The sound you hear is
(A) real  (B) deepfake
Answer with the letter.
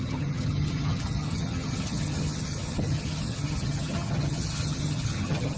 B